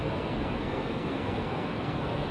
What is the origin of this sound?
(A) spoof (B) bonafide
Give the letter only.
A